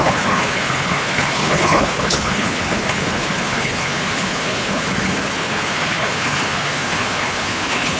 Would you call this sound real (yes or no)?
no